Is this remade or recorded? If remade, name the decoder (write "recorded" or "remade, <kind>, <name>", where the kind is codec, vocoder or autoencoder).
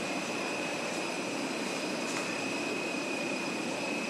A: remade, vocoder, BigVGAN v2